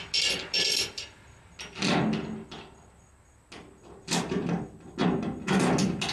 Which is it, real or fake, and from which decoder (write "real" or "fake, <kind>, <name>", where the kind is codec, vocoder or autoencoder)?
real